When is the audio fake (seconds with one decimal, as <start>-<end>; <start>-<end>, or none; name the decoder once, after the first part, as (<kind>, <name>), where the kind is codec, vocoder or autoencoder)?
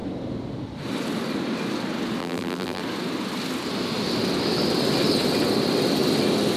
2.2-2.8 (vocoder, BigVGAN v2)